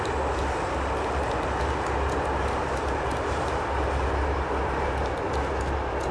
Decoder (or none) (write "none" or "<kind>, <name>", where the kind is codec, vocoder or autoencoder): none